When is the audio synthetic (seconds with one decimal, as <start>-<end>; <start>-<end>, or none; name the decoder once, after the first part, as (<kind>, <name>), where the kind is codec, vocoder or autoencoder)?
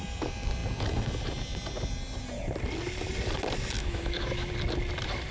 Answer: 3.8-4.5 (autoencoder, DAC-VAE)